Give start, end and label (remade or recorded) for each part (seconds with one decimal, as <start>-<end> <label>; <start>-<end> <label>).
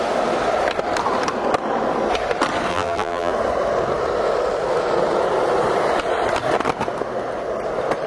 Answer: 0.0-2.7 recorded; 2.7-3.3 remade; 3.3-8.1 recorded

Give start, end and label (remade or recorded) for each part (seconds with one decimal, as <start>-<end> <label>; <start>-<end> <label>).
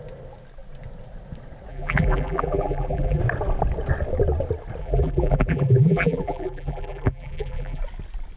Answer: 0.0-1.7 recorded; 1.7-3.2 remade; 3.2-4.8 recorded; 4.8-7.8 remade; 7.8-8.4 recorded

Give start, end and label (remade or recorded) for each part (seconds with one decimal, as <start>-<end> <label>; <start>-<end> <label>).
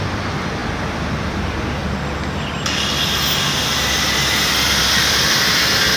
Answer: 0.0-0.6 remade; 0.6-1.2 recorded; 1.2-1.8 remade; 1.8-4.8 recorded; 4.8-6.0 remade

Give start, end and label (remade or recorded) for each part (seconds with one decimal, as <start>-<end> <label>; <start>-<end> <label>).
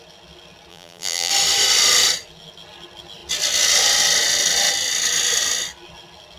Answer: 0.0-0.7 recorded; 0.7-1.3 remade; 1.3-6.4 recorded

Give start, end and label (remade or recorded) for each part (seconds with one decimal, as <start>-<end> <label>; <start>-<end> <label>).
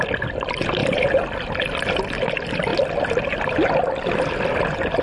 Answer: 0.0-5.0 recorded